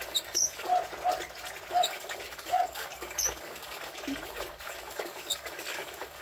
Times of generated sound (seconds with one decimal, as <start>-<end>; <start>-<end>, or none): 0.0-0.7; 1.7-6.2